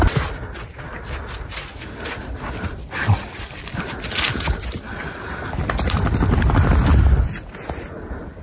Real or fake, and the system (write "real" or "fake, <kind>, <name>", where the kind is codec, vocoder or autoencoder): real